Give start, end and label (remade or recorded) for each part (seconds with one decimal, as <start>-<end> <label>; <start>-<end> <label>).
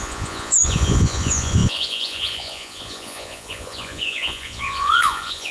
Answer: 0.0-5.5 remade